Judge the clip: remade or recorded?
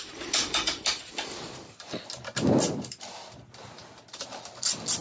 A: recorded